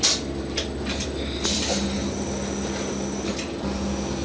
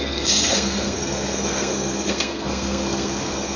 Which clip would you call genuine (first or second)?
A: first